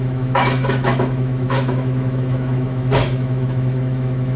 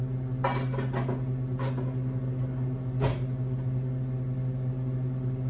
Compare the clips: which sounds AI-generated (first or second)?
first